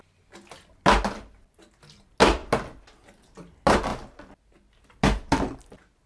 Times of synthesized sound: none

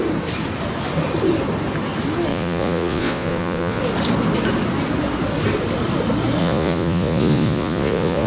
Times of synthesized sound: 2.3-3.8 (vocoder, Vocos); 6.4-8.3

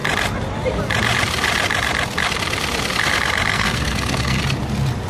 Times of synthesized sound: 3.5-4.4 (codec, SNAC)

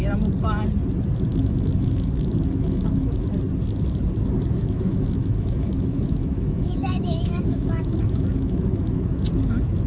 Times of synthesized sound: 1.3-3.3 (autoencoder, DAC-VAE); 4.6-9.2

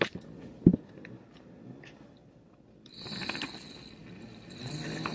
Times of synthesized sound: none

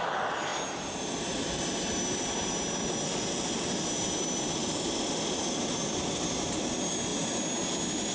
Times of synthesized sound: none

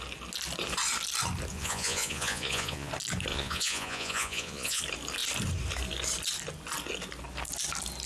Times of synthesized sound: 1.5-2.9 (vocoder, Vocos); 3.3-4.8

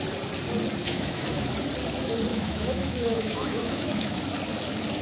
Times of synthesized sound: 0.8-1.5 (autoencoder, DAC-VAE); 2.3-4.2